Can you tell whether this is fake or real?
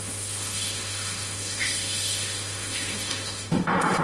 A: fake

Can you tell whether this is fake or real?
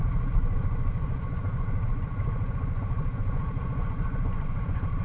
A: fake